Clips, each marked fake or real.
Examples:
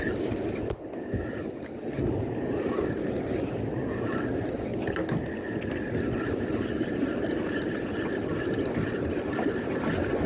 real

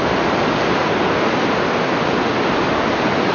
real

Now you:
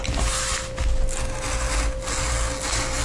real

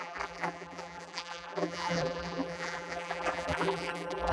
fake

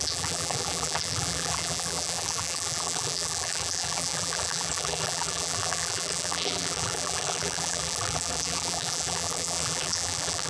fake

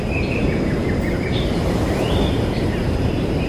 fake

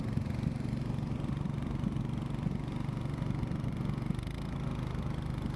real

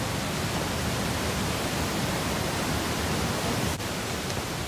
fake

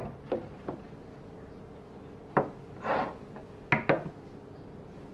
real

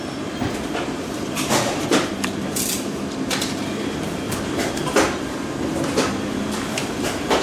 fake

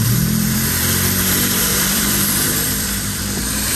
fake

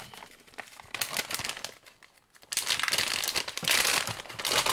real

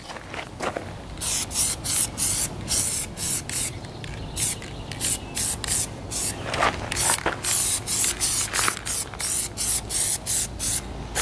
real